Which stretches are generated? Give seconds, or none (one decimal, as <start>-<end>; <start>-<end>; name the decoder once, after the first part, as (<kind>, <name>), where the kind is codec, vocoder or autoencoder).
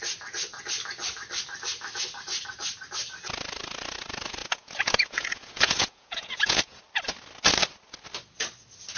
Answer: 4.4-6.8 (vocoder, Vocos)